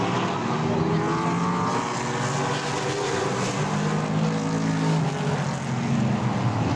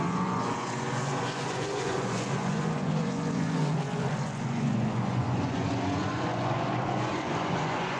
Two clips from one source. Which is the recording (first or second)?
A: first